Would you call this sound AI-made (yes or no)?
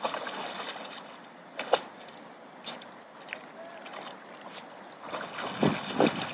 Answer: no